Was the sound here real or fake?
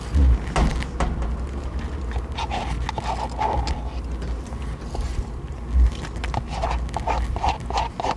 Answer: real